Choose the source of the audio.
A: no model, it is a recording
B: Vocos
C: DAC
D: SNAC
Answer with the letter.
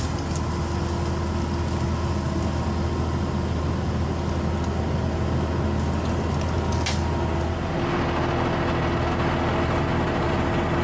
A